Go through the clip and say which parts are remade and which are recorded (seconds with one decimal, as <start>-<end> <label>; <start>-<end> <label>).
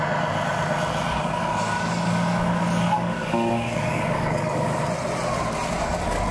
0.0-1.1 recorded; 1.1-4.8 remade; 4.8-6.3 recorded